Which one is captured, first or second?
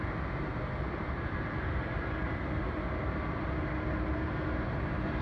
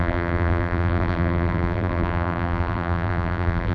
first